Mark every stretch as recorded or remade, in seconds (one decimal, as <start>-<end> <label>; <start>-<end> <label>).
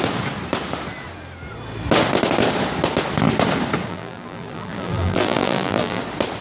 0.0-3.9 recorded; 3.9-6.0 remade; 6.0-6.4 recorded